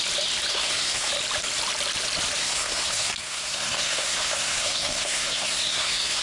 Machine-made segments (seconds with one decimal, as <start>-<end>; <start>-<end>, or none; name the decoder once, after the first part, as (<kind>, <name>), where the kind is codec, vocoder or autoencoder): 0.5-1.1 (codec, SNAC); 2.4-6.2